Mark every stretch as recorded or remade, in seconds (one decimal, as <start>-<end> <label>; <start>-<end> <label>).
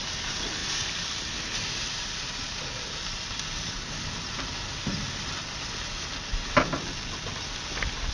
0.0-8.1 recorded